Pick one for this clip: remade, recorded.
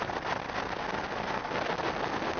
recorded